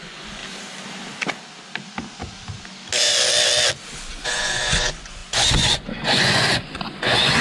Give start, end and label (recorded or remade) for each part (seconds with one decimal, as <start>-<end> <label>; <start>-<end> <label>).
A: 0.0-0.4 remade; 0.4-4.1 recorded; 4.1-7.4 remade